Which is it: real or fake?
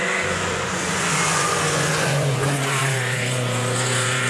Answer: fake